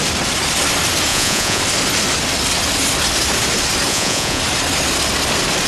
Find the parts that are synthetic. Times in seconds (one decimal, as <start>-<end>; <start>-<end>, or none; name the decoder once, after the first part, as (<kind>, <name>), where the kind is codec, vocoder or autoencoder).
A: 1.1-1.6 (vocoder, Vocos); 3.9-4.4